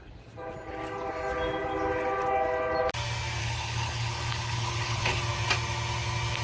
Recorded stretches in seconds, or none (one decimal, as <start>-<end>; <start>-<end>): 0.0-3.4; 5.2-6.4